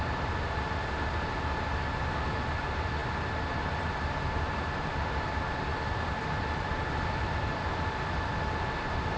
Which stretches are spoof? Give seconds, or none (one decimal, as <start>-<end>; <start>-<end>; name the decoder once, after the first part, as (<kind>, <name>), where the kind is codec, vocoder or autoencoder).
5.7-8.3 (vocoder, BigVGAN v2)